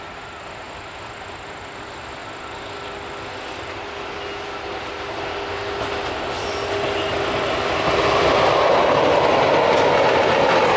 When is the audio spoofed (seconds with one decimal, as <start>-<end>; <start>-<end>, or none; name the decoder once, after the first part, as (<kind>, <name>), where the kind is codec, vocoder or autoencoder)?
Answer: none

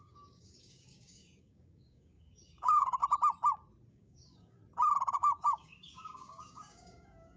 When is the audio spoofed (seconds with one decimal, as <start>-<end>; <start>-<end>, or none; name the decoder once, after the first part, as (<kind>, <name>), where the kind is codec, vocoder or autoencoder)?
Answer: 0.0-3.0 (codec, DAC); 3.9-4.6; 5.1-7.4

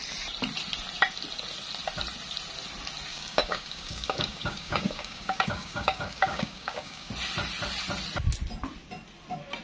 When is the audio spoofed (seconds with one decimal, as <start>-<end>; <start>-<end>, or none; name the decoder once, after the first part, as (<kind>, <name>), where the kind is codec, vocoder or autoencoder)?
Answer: 3.1-7.1 (codec, DAC)

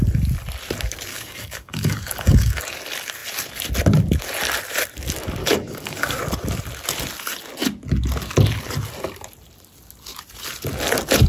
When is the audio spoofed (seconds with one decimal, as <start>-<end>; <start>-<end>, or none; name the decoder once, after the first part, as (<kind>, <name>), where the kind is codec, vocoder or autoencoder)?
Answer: 1.1-2.6 (codec, DAC); 5.4-6.2

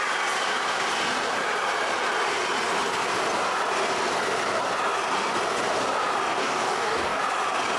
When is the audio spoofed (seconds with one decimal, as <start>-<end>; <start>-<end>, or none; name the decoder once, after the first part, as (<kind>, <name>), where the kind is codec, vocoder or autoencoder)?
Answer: 6.4-7.2 (codec, DAC)